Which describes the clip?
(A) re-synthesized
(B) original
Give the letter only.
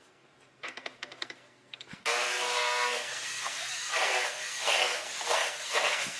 A